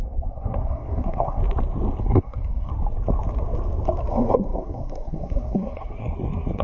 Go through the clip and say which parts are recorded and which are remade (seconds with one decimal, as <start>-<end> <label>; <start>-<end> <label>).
0.0-1.4 remade; 1.4-2.0 recorded; 2.0-2.7 remade; 2.7-4.1 recorded; 4.1-6.6 remade

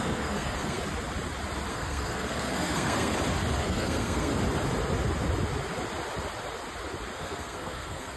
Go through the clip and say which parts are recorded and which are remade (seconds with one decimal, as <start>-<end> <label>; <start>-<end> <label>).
0.0-0.8 remade; 0.8-1.7 recorded; 1.7-3.1 remade; 3.1-3.6 recorded; 3.6-4.3 remade; 4.3-7.2 recorded; 7.2-8.2 remade

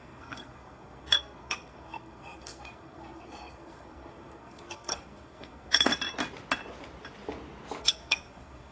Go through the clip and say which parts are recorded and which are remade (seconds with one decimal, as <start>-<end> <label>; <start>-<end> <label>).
0.0-5.9 remade; 5.9-7.8 recorded; 7.8-8.7 remade

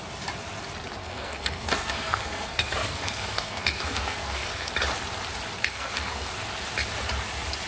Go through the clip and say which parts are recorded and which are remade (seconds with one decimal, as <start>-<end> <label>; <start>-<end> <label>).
0.0-1.0 recorded; 1.0-4.7 remade; 4.7-5.6 recorded; 5.6-6.3 remade; 6.3-7.7 recorded

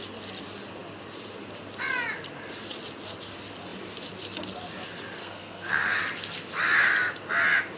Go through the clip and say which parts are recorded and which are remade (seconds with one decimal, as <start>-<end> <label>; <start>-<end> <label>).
0.0-5.2 recorded; 5.2-6.0 remade; 6.0-7.8 recorded

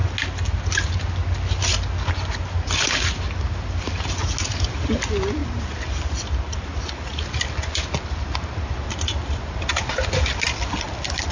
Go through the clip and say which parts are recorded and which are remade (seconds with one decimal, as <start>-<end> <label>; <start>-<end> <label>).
0.0-11.3 recorded